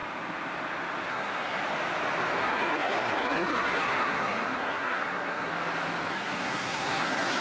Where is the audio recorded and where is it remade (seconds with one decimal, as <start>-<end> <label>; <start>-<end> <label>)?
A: 0.0-1.1 recorded; 1.1-1.6 remade; 1.6-2.4 recorded; 2.4-5.5 remade; 5.5-6.1 recorded; 6.1-7.4 remade